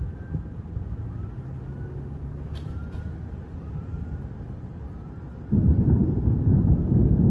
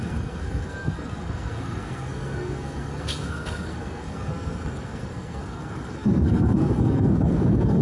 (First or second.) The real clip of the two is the first